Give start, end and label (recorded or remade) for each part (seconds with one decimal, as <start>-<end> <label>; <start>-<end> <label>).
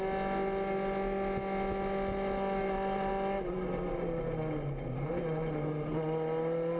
0.0-2.6 recorded; 2.6-3.1 remade; 3.1-6.8 recorded